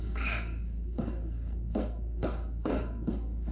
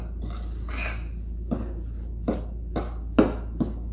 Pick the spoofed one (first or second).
first